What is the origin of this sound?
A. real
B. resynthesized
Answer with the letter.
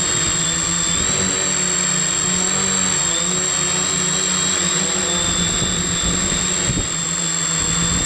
A